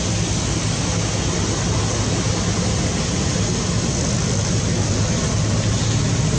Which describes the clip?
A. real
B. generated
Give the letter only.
A